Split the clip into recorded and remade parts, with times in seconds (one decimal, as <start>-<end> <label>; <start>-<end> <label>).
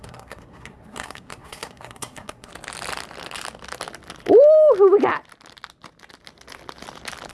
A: 0.0-2.5 remade; 2.5-7.3 recorded